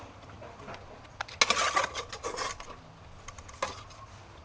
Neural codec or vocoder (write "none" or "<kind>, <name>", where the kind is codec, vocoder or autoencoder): none